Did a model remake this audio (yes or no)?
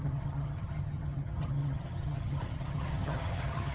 yes